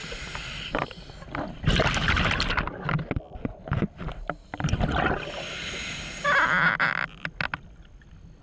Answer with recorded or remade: recorded